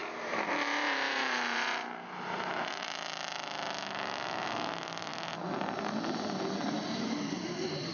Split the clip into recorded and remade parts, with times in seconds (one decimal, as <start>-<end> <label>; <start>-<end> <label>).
0.0-2.7 remade; 2.7-7.9 recorded